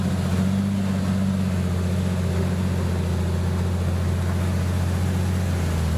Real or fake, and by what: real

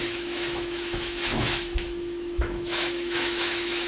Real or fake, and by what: fake, autoencoder, DAC-VAE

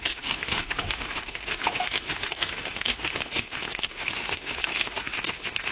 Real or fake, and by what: fake, autoencoder, DAC-VAE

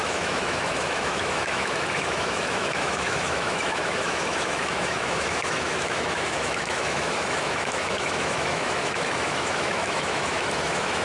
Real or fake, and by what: fake, autoencoder, DAC-VAE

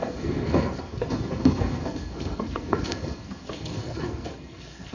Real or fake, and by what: fake, codec, SNAC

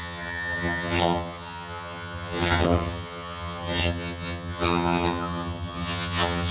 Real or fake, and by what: fake, vocoder, HiFi-GAN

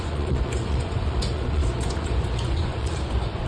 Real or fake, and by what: fake, vocoder, Vocos